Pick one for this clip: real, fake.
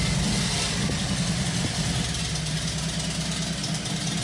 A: real